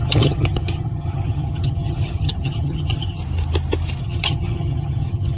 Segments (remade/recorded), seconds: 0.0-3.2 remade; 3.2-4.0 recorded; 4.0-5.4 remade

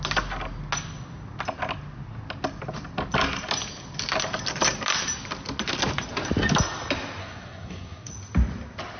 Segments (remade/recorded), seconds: 0.0-7.2 recorded; 7.2-8.1 remade; 8.1-9.0 recorded